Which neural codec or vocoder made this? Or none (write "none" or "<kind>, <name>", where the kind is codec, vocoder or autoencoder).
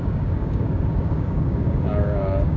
codec, DAC